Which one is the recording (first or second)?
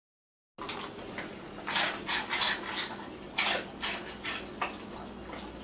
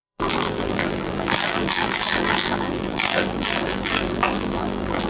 first